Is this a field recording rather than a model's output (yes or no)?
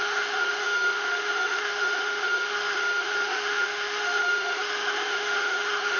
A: no